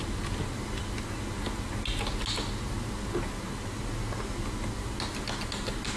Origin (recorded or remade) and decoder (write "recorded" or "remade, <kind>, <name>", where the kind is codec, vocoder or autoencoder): recorded